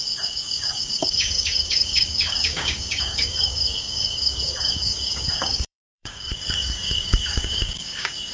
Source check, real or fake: fake